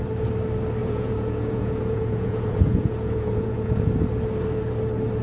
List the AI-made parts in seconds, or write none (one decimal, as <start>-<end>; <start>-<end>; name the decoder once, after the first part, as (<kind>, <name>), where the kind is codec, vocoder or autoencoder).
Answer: 0.8-3.9 (vocoder, Vocos)